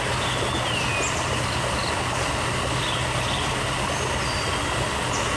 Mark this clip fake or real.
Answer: real